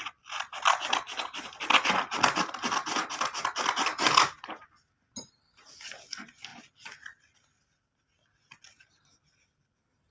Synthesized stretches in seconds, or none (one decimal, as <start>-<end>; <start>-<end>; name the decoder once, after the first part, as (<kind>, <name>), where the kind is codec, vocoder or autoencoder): none